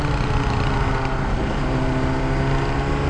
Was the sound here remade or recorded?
recorded